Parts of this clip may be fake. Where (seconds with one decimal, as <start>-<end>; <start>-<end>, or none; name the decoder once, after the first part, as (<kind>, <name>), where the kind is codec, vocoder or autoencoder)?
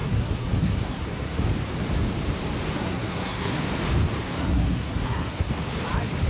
0.0-1.4 (codec, SNAC); 2.8-3.6; 4.2-5.5